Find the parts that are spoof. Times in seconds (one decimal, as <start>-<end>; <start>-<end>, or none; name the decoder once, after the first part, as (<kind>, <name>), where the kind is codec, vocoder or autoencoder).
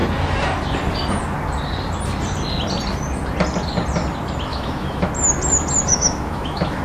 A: 4.5-5.1 (autoencoder, DAC-VAE); 5.8-6.8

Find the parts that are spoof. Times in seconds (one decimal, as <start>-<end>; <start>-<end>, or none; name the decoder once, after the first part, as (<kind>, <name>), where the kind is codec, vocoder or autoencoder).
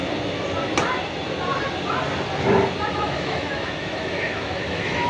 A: 2.9-5.1 (autoencoder, DAC-VAE)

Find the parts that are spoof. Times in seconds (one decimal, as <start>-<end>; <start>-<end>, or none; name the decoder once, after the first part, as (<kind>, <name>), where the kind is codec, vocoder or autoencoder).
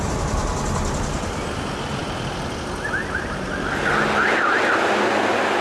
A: none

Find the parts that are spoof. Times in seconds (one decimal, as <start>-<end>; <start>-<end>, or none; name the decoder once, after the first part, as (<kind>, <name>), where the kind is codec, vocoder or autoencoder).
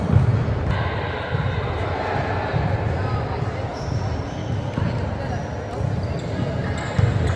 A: none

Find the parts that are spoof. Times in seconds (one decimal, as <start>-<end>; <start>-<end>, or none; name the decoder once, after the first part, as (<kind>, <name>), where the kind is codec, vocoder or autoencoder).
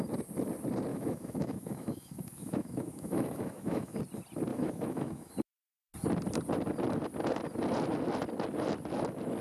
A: 0.9-4.0 (autoencoder, DAC-VAE); 4.5-5.3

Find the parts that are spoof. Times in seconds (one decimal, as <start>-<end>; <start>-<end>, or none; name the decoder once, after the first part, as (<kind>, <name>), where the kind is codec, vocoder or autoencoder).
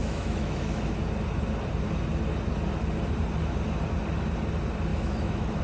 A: 0.0-0.8 (autoencoder, DAC-VAE); 4.9-5.6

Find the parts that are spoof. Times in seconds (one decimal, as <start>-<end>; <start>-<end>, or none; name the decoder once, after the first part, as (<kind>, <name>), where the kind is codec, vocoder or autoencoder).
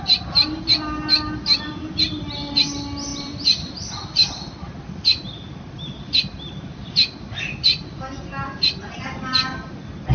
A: none